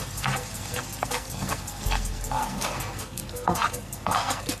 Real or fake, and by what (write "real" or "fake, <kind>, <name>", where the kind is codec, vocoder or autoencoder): fake, codec, SNAC